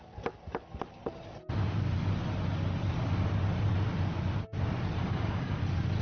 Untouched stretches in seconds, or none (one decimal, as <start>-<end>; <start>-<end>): 0.0-5.0; 5.6-6.0